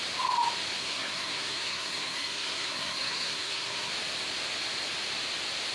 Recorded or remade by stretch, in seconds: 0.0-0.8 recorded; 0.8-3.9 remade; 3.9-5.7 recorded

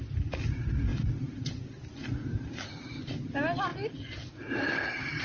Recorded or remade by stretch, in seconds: 0.0-5.2 recorded

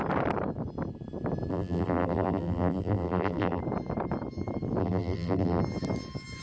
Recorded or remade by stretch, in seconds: 0.0-1.5 recorded; 1.5-3.6 remade; 3.6-4.8 recorded; 4.8-5.6 remade; 5.6-6.4 recorded

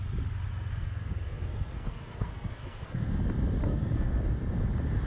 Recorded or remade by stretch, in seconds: 0.0-0.7 recorded; 0.7-3.1 remade; 3.1-3.6 recorded; 3.6-4.2 remade; 4.2-5.1 recorded

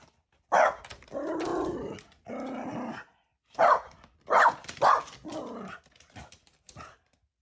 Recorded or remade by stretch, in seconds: 0.0-7.4 recorded

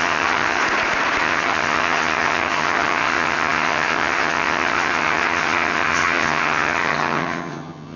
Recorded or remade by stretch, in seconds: 0.0-0.6 remade; 0.6-1.2 recorded; 1.2-8.0 remade

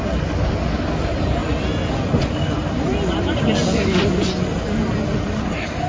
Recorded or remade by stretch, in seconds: 0.0-3.6 recorded; 3.6-4.2 remade; 4.2-5.9 recorded

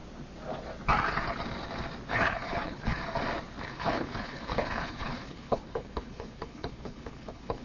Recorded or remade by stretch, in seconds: 0.0-2.1 recorded; 2.1-3.0 remade; 3.0-3.6 recorded; 3.6-7.6 remade